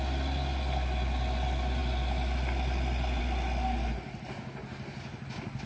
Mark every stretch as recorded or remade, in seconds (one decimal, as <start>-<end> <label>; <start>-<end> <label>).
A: 0.0-5.7 recorded